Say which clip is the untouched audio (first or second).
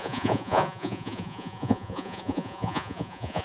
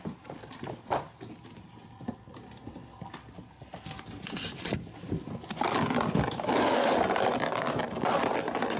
second